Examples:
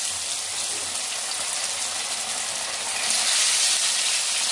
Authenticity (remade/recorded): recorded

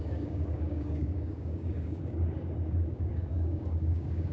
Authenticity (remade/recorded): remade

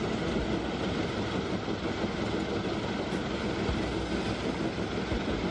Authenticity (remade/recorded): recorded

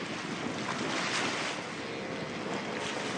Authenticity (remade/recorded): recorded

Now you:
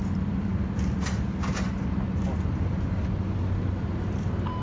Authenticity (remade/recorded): recorded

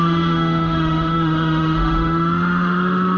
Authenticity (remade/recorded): remade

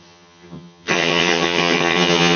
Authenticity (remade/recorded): remade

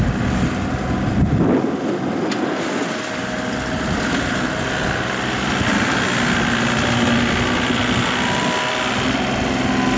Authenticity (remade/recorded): recorded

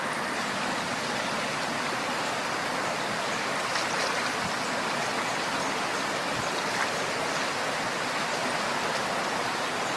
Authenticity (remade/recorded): recorded